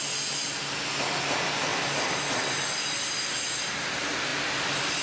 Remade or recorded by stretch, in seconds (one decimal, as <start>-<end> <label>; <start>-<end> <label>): 0.0-5.0 recorded